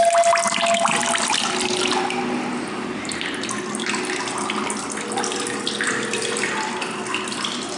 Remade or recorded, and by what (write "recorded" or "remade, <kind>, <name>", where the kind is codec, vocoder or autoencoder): recorded